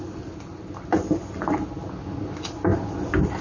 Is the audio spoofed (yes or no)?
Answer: no